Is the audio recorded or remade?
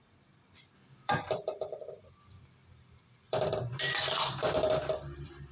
remade